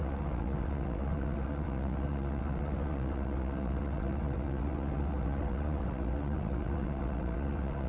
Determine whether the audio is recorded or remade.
remade